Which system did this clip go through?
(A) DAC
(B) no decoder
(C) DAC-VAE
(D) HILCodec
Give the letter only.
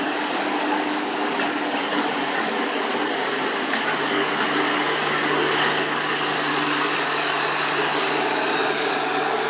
A